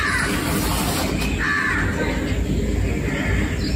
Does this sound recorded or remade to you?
recorded